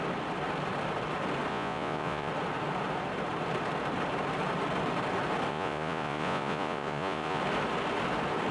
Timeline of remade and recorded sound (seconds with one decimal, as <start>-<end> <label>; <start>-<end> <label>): 0.0-1.5 recorded; 1.5-2.3 remade; 2.3-5.5 recorded; 5.5-7.4 remade; 7.4-8.5 recorded